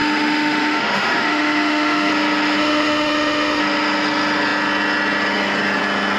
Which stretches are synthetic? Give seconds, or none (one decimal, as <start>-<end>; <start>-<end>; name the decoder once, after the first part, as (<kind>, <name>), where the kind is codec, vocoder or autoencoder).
0.0-2.1 (autoencoder, DAC-VAE); 2.6-3.6